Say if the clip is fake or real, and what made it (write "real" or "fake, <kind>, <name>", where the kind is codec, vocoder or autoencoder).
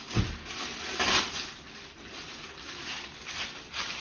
real